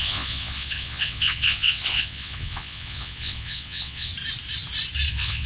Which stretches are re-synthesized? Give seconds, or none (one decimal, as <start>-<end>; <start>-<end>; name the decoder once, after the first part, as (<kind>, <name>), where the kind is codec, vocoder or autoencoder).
0.0-4.1 (vocoder, WaveNeXt); 5.1-5.5

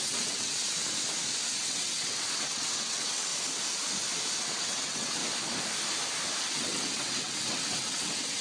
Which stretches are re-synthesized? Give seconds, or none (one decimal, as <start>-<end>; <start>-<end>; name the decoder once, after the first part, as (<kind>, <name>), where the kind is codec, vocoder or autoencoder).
0.0-0.6 (vocoder, WaveNeXt); 1.6-3.3; 4.4-5.2; 6.5-8.4

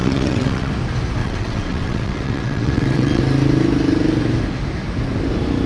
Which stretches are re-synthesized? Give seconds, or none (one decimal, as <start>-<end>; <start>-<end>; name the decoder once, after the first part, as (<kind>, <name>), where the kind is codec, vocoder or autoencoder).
0.0-0.7 (vocoder, WaveNeXt); 1.2-3.2

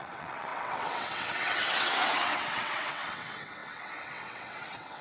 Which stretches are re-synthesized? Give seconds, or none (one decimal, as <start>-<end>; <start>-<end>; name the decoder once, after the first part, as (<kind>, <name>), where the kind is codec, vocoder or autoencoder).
0.0-5.0 (vocoder, WaveNeXt)

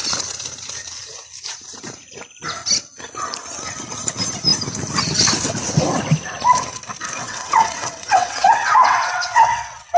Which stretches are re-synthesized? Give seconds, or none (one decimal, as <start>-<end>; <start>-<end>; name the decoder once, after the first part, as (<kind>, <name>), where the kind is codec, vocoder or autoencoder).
7.2-10.0 (vocoder, WaveNeXt)

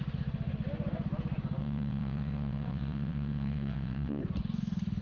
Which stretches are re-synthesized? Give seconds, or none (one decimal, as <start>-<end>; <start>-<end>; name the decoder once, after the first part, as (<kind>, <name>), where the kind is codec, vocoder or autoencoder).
1.6-4.2 (vocoder, WaveNeXt)

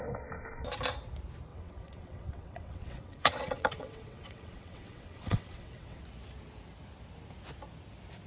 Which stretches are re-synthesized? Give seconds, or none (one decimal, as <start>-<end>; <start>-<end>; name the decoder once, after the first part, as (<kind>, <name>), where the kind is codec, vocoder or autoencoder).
1.5-6.0 (vocoder, WaveNeXt)